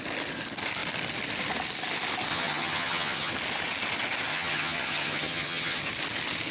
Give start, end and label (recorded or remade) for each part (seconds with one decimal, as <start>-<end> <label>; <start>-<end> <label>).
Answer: 0.0-2.3 recorded; 2.3-3.3 remade; 3.3-4.3 recorded; 4.3-5.8 remade; 5.8-6.5 recorded